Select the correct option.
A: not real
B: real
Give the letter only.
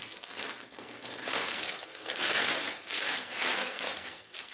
A